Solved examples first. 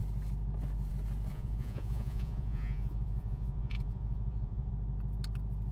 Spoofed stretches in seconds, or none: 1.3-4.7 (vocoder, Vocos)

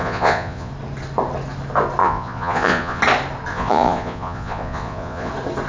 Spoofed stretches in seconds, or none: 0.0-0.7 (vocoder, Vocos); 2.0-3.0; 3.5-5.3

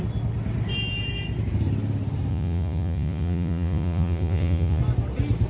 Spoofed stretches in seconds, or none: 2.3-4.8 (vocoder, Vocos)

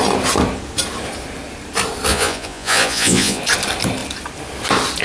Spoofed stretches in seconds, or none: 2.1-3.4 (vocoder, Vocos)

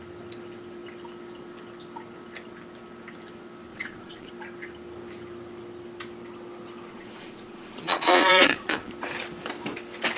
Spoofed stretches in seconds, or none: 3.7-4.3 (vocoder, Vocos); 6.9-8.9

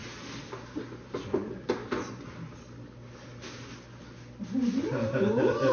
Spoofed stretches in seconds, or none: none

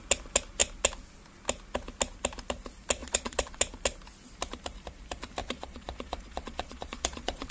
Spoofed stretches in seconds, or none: 3.0-3.6 (vocoder, Vocos); 5.4-7.5

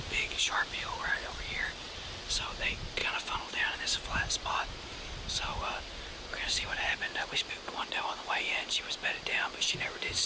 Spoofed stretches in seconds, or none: 1.0-2.0 (vocoder, Vocos); 3.0-3.8